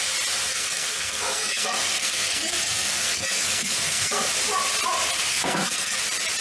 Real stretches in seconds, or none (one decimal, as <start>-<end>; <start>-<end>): 0.0-0.5; 4.3-5.3; 6.0-6.4